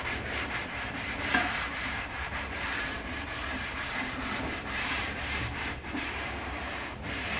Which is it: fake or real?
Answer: fake